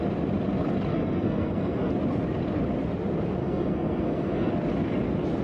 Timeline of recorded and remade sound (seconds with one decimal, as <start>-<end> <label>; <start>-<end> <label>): 0.0-0.9 recorded; 0.9-1.9 remade; 1.9-3.4 recorded; 3.4-4.5 remade; 4.5-5.4 recorded